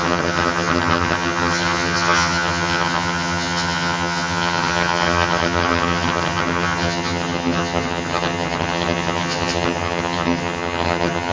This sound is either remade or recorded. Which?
remade